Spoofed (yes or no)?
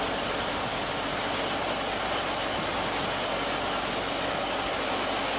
no